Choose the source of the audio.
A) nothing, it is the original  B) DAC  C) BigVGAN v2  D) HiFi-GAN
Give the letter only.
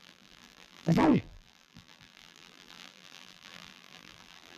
C